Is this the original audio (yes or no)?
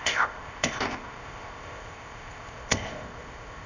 no